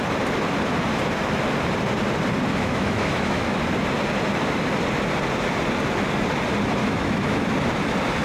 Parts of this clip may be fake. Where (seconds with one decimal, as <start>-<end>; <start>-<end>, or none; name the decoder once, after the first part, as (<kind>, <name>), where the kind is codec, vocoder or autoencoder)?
2.5-3.6 (autoencoder, DAC-VAE); 6.8-7.5